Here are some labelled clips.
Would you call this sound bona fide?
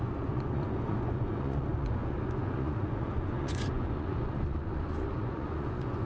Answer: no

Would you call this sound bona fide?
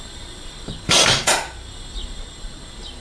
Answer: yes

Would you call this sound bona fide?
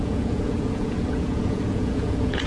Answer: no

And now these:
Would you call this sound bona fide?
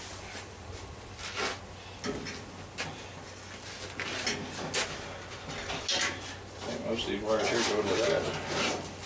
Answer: yes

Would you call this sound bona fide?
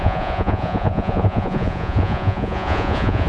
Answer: no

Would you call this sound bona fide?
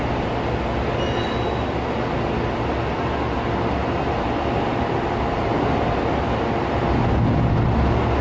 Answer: yes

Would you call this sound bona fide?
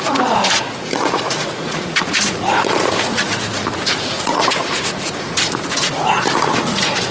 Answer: no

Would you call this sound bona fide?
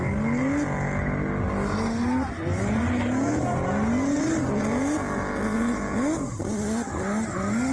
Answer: yes